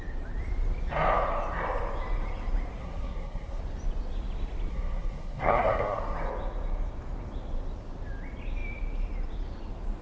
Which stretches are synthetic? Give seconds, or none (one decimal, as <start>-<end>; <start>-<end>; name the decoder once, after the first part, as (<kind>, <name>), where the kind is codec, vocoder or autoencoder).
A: 2.8-3.6 (codec, SNAC); 4.7-6.0